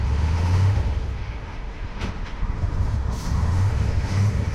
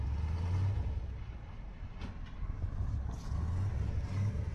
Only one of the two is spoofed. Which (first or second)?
first